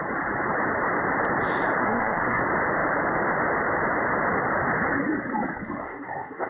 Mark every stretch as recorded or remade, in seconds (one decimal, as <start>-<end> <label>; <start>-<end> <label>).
0.0-1.8 recorded; 1.8-2.4 remade; 2.4-5.8 recorded; 5.8-6.5 remade